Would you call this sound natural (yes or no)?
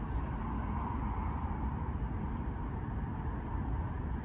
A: yes